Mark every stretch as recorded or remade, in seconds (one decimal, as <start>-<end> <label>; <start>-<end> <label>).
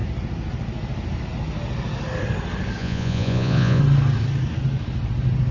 0.0-2.8 recorded; 2.8-3.8 remade; 3.8-5.5 recorded